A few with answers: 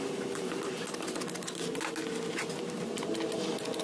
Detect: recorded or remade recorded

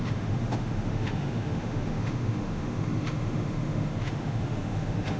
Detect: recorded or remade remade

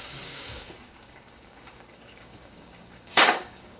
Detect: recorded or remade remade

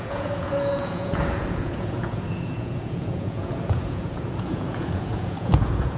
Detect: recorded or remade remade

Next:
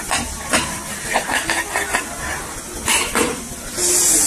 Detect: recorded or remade recorded